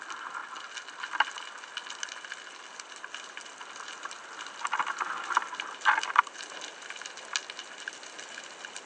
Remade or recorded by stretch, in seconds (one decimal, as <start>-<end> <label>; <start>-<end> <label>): 0.0-8.9 recorded